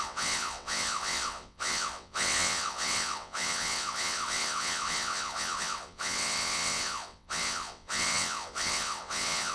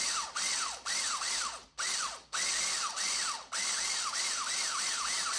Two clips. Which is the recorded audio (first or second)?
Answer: second